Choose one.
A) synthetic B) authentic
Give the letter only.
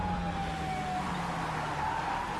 B